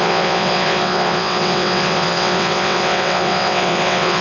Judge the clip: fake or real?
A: fake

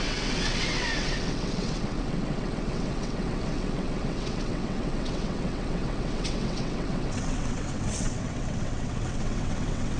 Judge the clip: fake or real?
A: fake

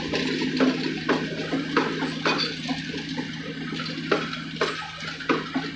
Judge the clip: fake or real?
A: real